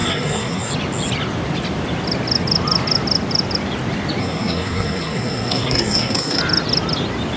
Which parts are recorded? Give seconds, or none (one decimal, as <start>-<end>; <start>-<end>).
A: 0.7-4.2; 6.4-7.4